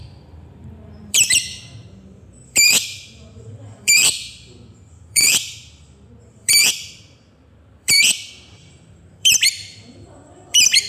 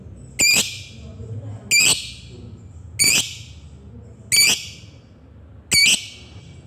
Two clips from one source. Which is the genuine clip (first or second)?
second